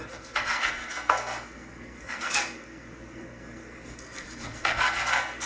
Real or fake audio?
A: fake